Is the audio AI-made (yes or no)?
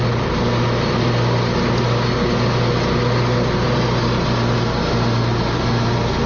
no